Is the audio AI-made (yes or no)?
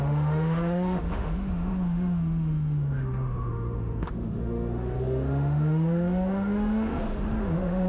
yes